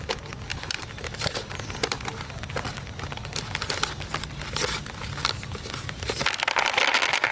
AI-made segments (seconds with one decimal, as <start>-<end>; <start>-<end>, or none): 0.5-1.7